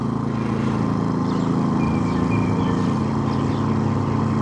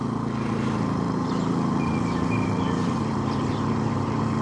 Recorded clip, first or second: first